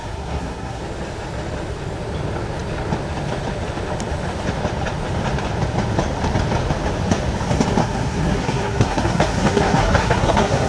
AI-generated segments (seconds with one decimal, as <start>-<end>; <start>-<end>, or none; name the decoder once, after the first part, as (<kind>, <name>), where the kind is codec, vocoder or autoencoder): 0.0-0.8 (codec, SNAC); 7.8-10.7